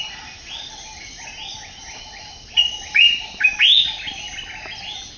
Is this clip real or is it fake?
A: real